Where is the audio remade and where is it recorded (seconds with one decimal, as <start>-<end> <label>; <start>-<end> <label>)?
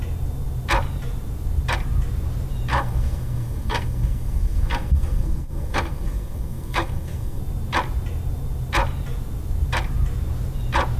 0.0-2.7 recorded; 2.7-7.4 remade; 7.4-11.0 recorded